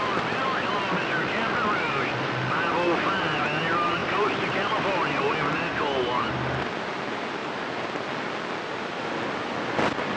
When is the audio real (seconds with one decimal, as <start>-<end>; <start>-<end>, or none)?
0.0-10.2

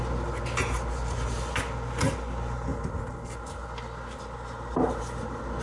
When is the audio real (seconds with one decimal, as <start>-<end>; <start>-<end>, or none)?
0.0-5.6

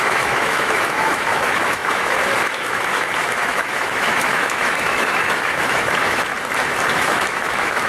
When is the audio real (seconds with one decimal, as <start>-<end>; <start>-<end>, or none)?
6.3-6.9

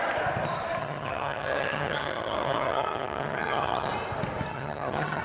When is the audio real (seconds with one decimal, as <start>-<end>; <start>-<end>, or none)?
0.0-0.8; 3.9-4.5